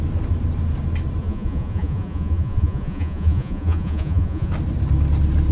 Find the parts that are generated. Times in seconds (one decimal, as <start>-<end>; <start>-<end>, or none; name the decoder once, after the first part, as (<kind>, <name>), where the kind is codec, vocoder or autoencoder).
1.2-4.5 (vocoder, Vocos)